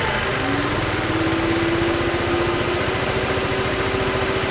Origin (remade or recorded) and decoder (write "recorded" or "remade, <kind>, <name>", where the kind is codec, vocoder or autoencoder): recorded